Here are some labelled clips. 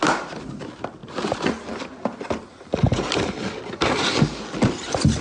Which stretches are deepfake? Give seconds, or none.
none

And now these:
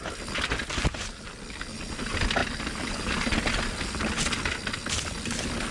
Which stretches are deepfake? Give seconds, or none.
none

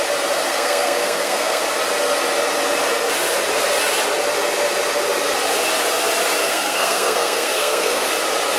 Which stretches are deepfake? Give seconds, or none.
0.5-1.6 (codec, SNAC); 6.4-8.1

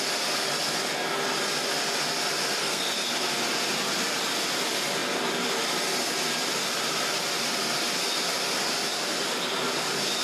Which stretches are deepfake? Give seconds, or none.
2.6-3.1 (codec, SNAC)

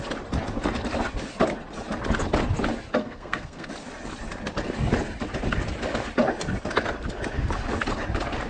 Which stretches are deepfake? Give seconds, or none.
3.0-3.7 (codec, SNAC)